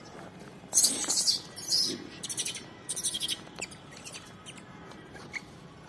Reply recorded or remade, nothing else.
remade